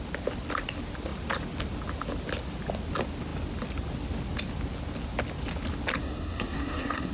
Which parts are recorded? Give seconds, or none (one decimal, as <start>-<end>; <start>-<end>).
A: 0.0-6.0

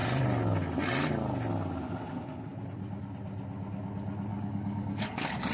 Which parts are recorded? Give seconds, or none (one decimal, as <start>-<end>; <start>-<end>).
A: 0.0-4.3

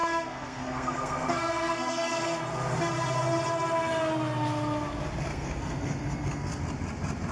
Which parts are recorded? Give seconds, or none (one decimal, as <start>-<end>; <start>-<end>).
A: 2.4-5.3; 6.6-7.3

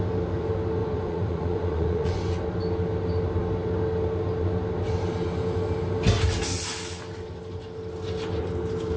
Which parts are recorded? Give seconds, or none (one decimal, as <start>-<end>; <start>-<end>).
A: 0.0-0.8; 2.2-9.0

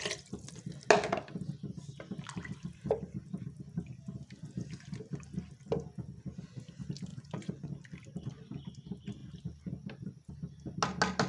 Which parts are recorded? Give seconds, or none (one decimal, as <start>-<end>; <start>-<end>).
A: 0.0-7.1; 7.7-11.3